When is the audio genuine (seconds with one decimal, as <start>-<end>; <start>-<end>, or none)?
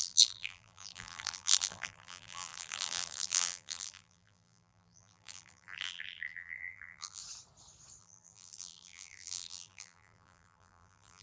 7.2-8.0